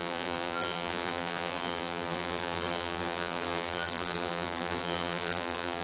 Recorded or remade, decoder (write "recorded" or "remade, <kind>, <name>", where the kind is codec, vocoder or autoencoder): remade, vocoder, BigVGAN v2